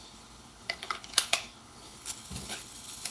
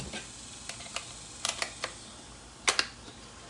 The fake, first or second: first